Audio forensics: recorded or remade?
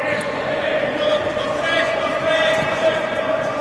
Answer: remade